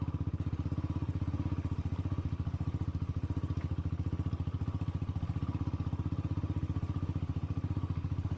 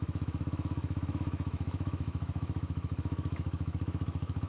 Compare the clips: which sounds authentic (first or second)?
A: first